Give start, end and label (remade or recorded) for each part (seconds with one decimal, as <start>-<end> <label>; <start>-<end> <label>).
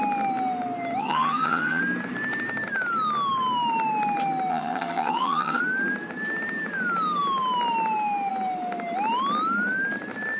0.0-1.0 recorded; 1.0-1.8 remade; 1.8-4.5 recorded; 4.5-5.6 remade; 5.6-10.4 recorded